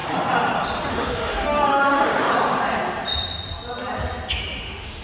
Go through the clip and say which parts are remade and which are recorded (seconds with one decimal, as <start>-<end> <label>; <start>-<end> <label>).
0.0-0.9 recorded; 0.9-2.3 remade; 2.3-4.6 recorded; 4.6-5.0 remade